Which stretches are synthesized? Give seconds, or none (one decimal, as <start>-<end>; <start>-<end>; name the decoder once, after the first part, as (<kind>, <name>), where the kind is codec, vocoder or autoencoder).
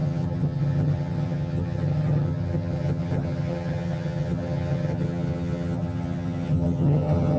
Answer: 0.0-7.4 (vocoder, HiFi-GAN)